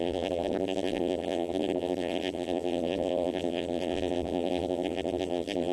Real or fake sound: fake